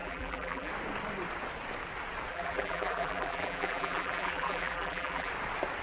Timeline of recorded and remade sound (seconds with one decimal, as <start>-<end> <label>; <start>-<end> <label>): 0.0-0.7 remade; 0.7-2.3 recorded; 2.3-5.3 remade; 5.3-5.8 recorded